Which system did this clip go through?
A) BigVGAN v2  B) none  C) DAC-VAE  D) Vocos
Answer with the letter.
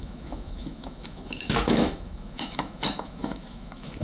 C